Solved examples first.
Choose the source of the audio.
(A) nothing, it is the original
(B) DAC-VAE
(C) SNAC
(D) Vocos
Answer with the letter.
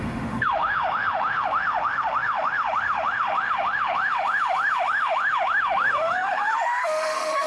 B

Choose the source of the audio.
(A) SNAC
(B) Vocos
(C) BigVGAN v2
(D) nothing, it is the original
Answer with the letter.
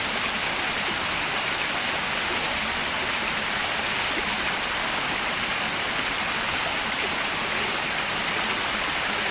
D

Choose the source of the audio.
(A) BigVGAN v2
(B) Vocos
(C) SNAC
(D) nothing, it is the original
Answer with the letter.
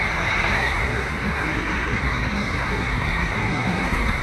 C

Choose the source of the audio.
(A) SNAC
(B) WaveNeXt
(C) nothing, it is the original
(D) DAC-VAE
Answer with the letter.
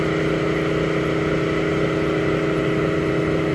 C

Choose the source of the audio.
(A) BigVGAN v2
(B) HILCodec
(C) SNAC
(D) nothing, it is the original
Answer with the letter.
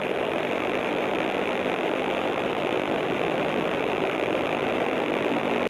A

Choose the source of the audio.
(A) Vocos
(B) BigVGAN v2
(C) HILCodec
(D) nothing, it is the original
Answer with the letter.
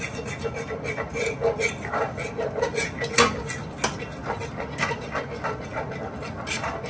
D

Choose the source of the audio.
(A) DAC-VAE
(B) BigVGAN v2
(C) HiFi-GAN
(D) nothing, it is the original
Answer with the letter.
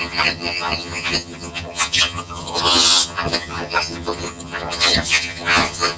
C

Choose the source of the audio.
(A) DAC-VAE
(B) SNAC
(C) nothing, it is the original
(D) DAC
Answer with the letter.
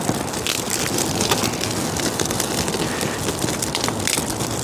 C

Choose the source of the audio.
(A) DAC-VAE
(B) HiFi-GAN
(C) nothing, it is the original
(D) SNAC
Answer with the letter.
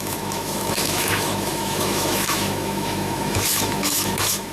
A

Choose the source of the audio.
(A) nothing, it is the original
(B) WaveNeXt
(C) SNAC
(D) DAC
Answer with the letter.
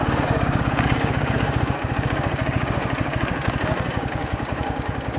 D